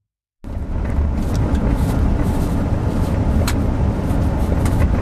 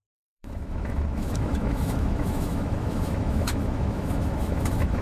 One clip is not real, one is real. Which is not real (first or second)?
second